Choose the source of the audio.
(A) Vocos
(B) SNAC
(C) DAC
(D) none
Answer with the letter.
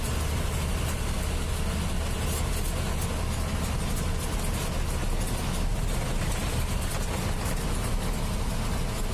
D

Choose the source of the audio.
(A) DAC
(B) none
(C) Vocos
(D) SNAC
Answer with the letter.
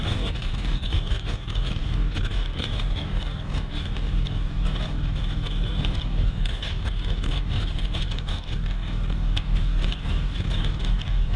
A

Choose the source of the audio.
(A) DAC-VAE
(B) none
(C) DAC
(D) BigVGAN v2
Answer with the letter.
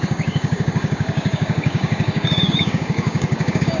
C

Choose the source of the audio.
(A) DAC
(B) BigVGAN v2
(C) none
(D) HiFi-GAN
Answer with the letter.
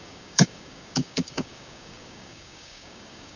A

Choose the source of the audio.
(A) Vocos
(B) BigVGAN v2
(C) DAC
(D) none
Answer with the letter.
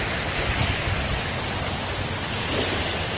D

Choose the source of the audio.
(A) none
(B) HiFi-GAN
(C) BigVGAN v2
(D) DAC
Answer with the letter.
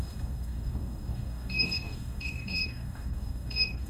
D